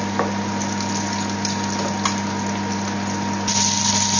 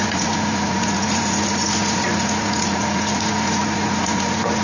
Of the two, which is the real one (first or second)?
first